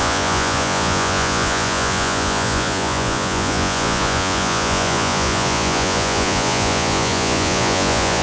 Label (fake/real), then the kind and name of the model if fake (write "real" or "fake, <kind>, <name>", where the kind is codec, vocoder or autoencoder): fake, vocoder, Vocos